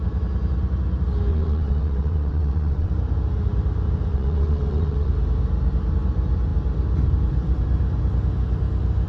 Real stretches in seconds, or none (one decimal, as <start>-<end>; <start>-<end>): 0.0-1.3; 2.9-4.1; 5.1-9.1